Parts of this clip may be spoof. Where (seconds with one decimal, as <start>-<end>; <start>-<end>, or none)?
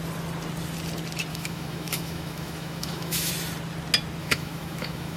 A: 1.3-3.3; 4.2-5.2